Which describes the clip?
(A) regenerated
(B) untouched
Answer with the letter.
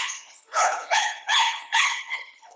A